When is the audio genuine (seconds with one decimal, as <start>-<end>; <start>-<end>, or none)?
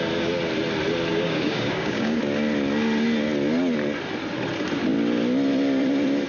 0.0-1.1; 2.2-6.3